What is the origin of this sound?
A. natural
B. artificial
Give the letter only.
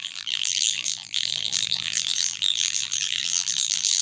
B